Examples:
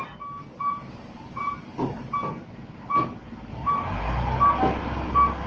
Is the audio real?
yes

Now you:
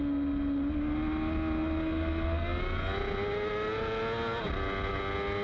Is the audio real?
yes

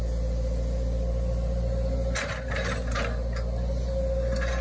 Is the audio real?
yes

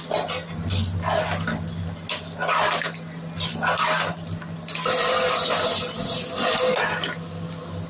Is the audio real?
yes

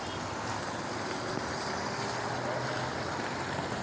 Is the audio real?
yes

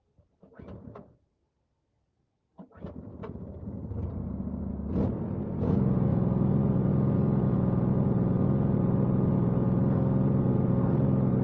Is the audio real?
yes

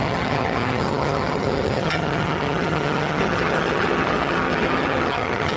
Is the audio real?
no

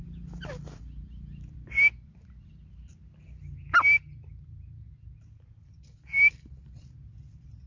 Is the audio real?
yes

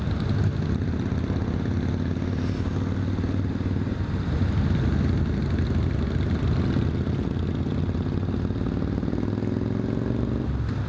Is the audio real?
yes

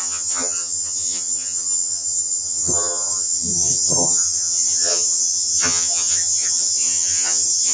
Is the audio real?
no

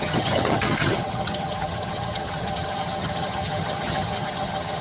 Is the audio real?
no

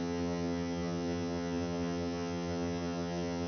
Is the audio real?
no